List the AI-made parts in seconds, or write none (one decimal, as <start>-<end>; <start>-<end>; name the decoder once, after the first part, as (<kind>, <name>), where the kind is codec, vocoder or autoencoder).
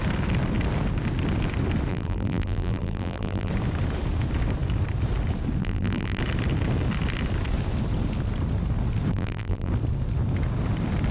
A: 1.9-3.5 (vocoder, BigVGAN v2); 5.6-6.2; 9.1-9.7